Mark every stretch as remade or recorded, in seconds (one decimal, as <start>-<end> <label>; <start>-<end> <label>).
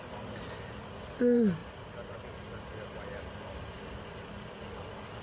0.0-1.6 recorded; 1.6-4.5 remade; 4.5-5.2 recorded